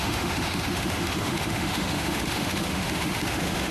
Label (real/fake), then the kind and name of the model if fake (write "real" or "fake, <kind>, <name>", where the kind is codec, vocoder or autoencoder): fake, autoencoder, DAC-VAE